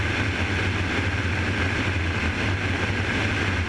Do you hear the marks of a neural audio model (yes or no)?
no